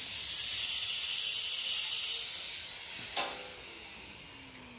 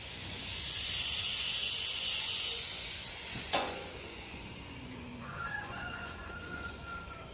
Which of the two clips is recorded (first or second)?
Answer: first